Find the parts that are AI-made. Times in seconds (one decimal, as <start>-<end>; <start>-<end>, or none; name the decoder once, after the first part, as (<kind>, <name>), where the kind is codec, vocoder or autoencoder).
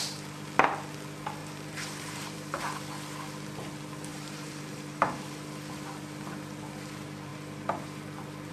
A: 1.4-2.6 (vocoder, BigVGAN v2); 4.1-5.3